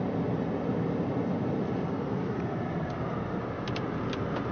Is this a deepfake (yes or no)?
no